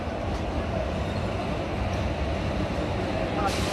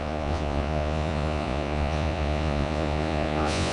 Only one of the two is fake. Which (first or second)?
second